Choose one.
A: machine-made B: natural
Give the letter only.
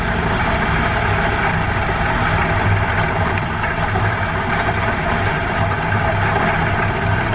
A